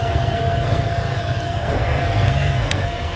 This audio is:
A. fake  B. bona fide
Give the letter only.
A